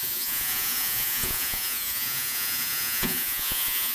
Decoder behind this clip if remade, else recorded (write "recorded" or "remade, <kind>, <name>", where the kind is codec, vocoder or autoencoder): remade, vocoder, Vocos